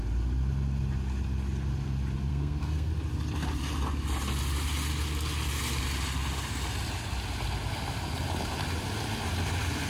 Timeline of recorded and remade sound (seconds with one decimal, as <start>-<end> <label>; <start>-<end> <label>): 0.0-2.3 recorded; 2.3-2.9 remade; 2.9-9.9 recorded